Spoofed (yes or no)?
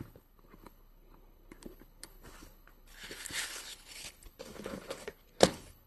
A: yes